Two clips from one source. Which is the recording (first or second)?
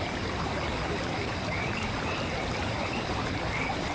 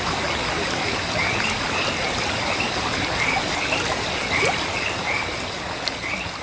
second